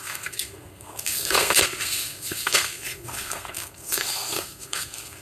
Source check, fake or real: fake